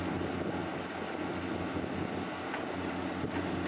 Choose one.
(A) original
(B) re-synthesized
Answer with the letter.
A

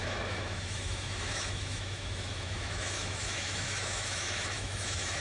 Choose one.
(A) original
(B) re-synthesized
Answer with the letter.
B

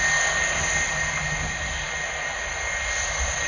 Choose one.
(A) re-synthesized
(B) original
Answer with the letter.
B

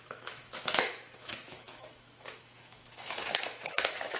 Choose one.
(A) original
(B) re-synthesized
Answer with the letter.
B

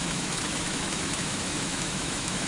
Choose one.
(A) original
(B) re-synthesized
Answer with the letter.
B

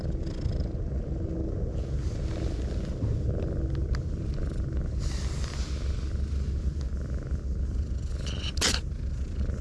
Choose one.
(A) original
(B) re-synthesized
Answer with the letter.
A